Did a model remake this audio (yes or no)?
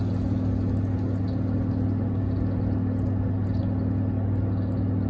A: no